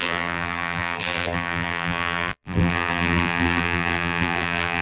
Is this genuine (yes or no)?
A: no